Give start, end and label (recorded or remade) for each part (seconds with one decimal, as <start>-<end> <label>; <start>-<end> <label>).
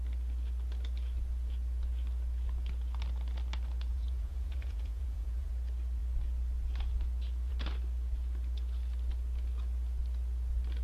0.0-3.9 recorded; 3.9-5.5 remade; 5.5-10.8 recorded